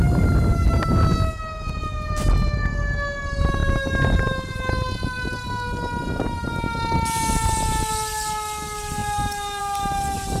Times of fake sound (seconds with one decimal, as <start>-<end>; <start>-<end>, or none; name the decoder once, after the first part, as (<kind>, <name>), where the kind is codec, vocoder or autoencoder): none